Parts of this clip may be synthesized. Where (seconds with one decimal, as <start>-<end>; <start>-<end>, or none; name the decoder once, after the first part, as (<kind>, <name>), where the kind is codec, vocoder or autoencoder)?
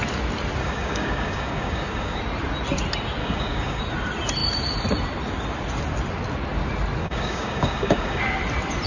0.6-2.2 (codec, DAC); 3.2-3.8; 7.0-8.2